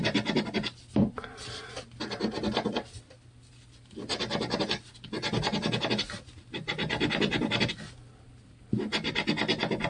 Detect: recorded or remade remade